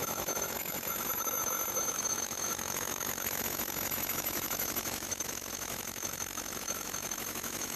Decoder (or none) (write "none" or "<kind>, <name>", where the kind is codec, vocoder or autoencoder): autoencoder, DAC-VAE